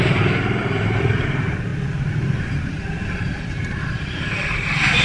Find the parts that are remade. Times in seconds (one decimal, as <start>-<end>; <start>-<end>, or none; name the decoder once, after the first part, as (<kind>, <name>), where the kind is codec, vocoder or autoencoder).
0.0-1.7 (vocoder, BigVGAN v2); 3.2-5.0